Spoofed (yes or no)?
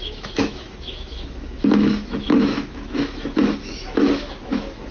yes